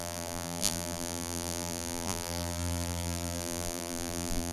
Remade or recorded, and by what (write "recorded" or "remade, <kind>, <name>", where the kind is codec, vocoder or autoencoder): remade, vocoder, BigVGAN v2